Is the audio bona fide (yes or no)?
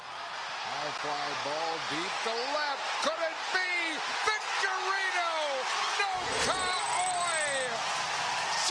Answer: yes